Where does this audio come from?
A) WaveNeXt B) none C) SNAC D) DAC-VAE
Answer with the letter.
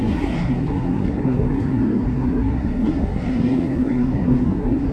C